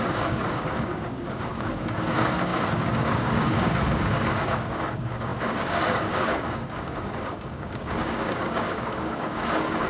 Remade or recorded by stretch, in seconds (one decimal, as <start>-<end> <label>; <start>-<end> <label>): 0.0-9.9 remade